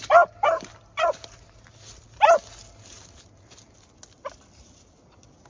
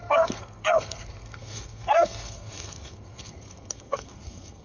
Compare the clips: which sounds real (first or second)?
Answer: first